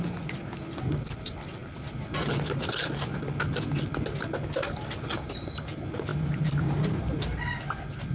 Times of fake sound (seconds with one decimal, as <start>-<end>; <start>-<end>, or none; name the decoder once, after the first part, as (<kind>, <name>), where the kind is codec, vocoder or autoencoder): none